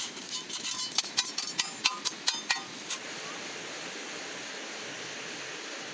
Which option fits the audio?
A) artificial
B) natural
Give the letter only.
B